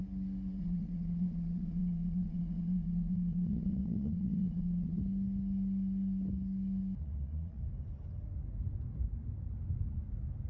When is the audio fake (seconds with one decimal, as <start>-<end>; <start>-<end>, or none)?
0.6-5.0; 7.0-7.6